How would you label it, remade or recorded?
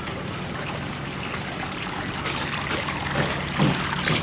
recorded